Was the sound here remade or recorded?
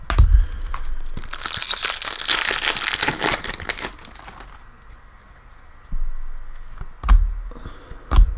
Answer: recorded